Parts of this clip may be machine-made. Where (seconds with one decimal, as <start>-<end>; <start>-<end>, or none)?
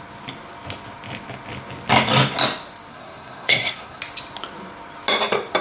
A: 2.9-4.0